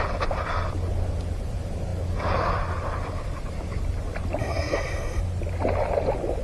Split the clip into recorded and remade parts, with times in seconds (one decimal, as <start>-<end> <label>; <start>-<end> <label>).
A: 0.0-4.4 recorded; 4.4-5.2 remade; 5.2-6.4 recorded